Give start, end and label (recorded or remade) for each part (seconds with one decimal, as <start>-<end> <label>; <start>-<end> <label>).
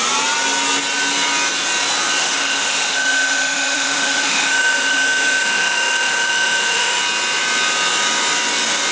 0.0-2.2 recorded; 2.2-7.0 remade; 7.0-8.9 recorded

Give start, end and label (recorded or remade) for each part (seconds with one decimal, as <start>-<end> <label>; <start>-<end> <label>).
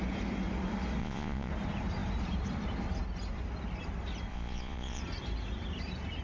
0.0-1.0 recorded; 1.0-1.5 remade; 1.5-4.3 recorded; 4.3-5.0 remade; 5.0-6.2 recorded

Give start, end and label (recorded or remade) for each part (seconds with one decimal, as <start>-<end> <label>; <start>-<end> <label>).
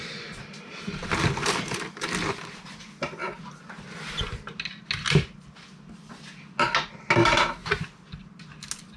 0.0-9.0 recorded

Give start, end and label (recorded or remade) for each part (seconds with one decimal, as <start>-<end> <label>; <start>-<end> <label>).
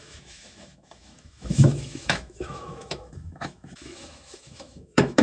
0.0-5.2 remade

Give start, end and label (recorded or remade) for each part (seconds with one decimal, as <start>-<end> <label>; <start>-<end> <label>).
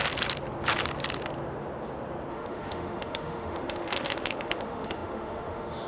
0.0-2.3 recorded; 2.3-5.9 remade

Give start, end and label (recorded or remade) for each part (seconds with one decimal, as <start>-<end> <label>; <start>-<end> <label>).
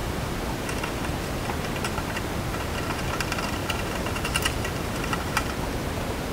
0.0-3.6 recorded; 3.6-5.5 remade; 5.5-6.3 recorded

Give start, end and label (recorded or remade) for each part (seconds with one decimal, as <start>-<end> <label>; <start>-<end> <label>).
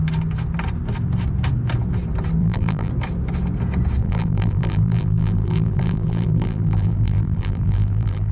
0.0-2.4 recorded; 2.4-2.9 remade; 2.9-4.0 recorded; 4.0-8.3 remade